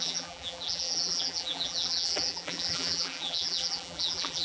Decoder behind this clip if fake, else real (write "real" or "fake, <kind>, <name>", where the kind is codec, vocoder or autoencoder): fake, vocoder, BigVGAN v2